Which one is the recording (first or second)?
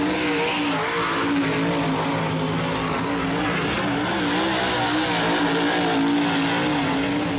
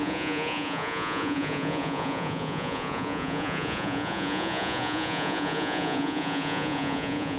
first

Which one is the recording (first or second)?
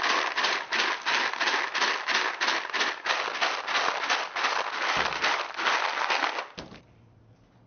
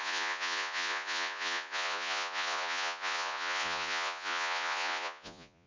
first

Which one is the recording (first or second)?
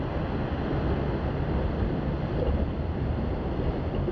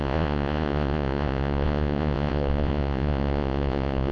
first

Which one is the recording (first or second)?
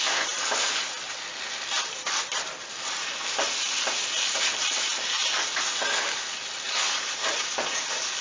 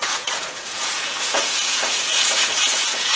first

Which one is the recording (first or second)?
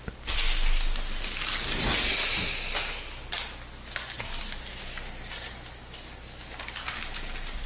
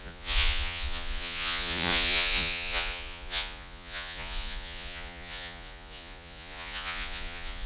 first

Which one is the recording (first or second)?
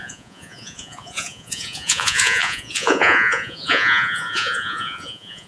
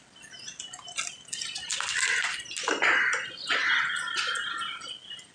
second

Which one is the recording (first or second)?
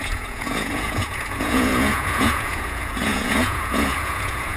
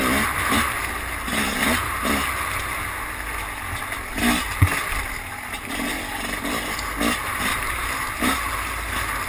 second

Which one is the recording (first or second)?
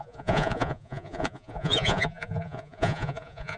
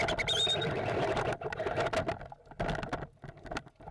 second